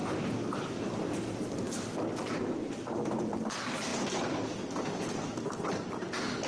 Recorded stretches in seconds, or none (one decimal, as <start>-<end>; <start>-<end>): 0.0-6.5